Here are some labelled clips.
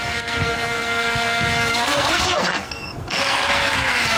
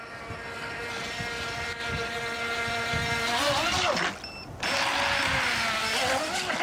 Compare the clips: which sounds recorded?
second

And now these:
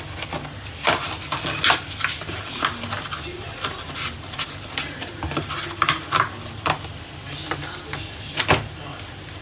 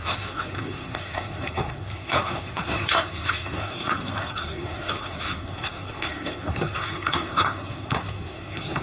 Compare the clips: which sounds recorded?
first